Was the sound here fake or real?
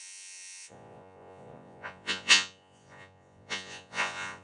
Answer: fake